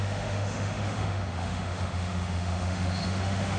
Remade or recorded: remade